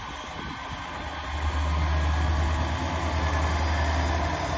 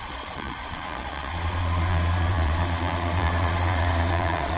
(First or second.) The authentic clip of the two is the first